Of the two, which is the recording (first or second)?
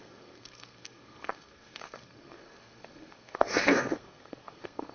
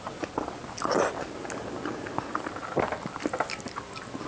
second